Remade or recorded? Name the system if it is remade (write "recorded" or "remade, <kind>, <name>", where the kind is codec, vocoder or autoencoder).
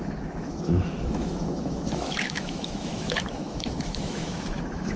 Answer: remade, autoencoder, DAC-VAE